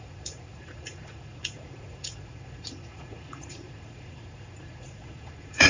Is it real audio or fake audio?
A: fake